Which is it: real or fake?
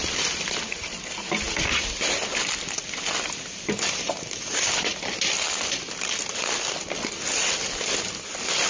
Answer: real